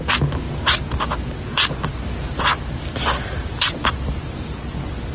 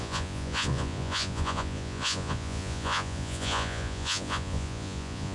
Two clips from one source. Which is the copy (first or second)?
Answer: second